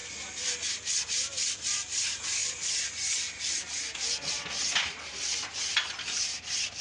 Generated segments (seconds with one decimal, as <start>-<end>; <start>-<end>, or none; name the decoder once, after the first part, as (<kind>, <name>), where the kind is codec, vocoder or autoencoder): none